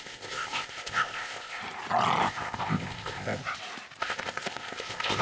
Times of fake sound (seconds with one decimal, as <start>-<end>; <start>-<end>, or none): 0.0-1.6; 2.2-3.4; 4.0-5.2